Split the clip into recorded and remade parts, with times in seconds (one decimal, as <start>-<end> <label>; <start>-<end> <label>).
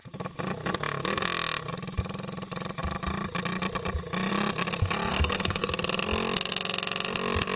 0.0-5.1 recorded; 5.1-5.7 remade; 5.7-7.6 recorded